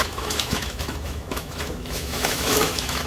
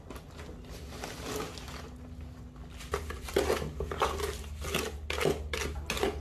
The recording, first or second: second